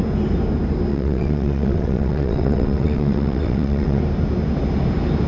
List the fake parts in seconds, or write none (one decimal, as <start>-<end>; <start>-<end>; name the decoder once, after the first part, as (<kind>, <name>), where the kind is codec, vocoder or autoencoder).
0.9-4.0 (vocoder, WaveNeXt)